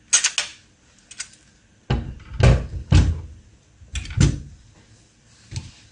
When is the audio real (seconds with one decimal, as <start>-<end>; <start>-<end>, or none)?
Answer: 0.0-5.9